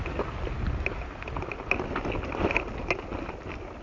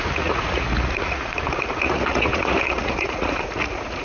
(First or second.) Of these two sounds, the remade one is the second